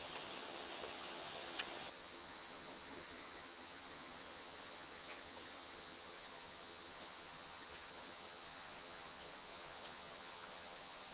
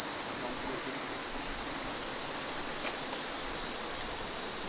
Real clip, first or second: second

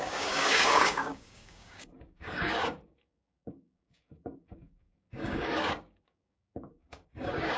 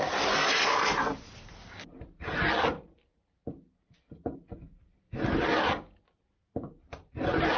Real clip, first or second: second